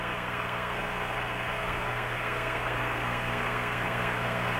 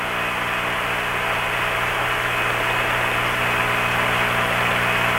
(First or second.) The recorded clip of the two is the second